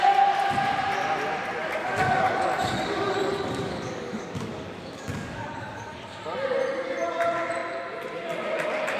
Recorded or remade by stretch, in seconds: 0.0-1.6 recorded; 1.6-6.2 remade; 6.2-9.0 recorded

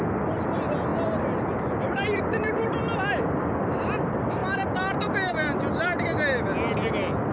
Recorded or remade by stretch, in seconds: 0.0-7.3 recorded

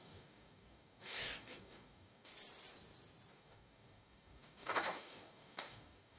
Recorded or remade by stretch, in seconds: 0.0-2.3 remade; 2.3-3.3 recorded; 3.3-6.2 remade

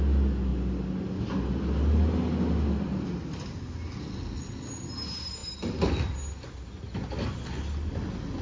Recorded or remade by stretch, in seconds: 0.0-8.4 recorded

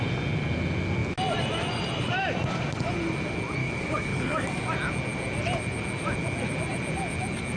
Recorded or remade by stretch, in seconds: 0.0-3.6 recorded; 3.6-4.6 remade; 4.6-7.6 recorded

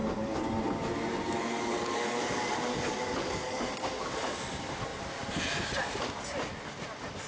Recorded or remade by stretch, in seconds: 0.0-0.5 remade; 0.5-1.8 recorded; 1.8-2.6 remade; 2.6-3.2 recorded; 3.2-4.1 remade; 4.1-7.3 recorded

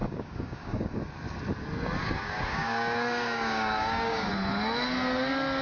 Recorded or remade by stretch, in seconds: 0.0-0.9 remade; 0.9-2.0 recorded; 2.0-4.3 remade; 4.3-5.6 recorded

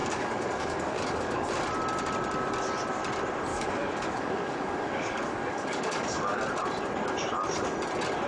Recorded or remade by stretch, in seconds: 0.0-1.5 remade; 1.5-3.5 recorded; 3.5-6.4 remade; 6.4-8.3 recorded